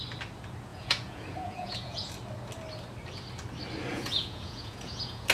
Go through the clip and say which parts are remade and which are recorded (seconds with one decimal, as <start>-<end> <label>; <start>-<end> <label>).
0.0-0.7 recorded; 0.7-2.1 remade; 2.1-3.9 recorded; 3.9-5.3 remade